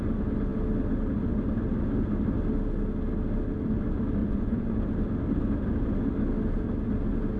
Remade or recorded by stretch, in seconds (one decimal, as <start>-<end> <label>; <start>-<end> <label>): 0.0-4.2 recorded; 4.2-4.8 remade; 4.8-7.4 recorded